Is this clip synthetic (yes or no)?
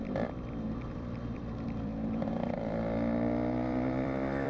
yes